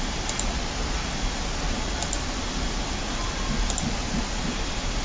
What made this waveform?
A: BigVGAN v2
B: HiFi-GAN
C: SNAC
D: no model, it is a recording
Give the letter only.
D